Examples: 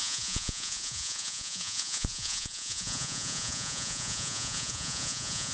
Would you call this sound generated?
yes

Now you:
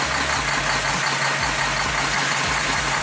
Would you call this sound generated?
no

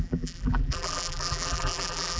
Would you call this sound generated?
yes